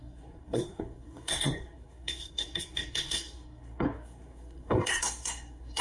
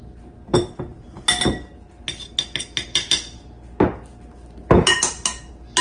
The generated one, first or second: first